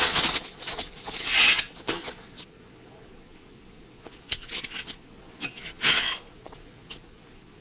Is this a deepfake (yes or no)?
yes